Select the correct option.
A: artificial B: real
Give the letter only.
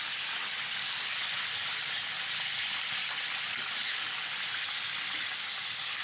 B